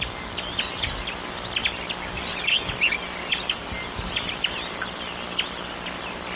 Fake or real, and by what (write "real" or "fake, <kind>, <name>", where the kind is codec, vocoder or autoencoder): real